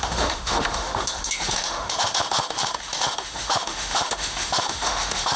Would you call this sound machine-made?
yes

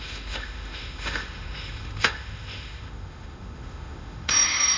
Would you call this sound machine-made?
yes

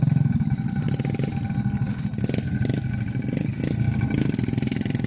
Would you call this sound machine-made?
no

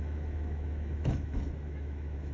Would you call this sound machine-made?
yes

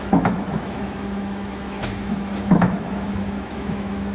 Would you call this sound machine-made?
yes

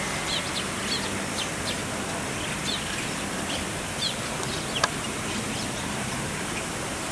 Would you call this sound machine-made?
no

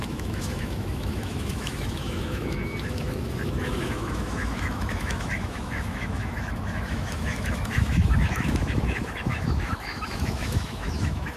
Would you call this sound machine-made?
yes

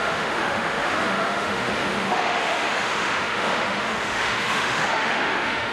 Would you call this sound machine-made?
yes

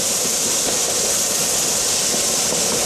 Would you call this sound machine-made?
no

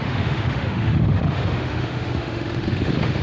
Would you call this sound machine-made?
yes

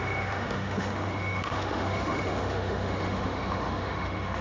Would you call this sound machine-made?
yes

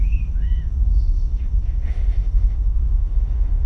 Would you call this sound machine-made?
yes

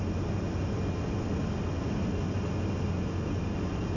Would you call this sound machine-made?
no